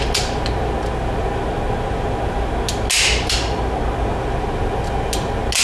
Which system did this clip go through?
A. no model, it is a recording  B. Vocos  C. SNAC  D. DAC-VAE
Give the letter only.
A